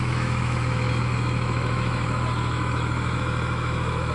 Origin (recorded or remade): remade